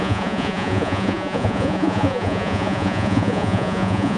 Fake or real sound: fake